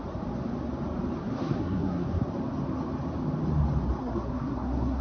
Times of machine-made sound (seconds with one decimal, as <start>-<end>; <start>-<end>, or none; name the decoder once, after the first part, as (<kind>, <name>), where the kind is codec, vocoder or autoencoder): 1.2-2.3 (codec, SNAC); 4.0-5.0

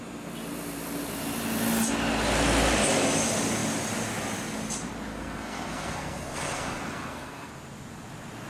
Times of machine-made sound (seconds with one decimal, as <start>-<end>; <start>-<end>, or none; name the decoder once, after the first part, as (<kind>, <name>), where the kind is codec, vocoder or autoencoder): 5.1-7.5 (codec, SNAC)